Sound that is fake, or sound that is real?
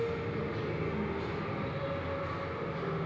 real